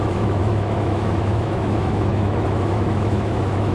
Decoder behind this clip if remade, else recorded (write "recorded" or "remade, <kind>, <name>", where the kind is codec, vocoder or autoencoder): remade, autoencoder, DAC-VAE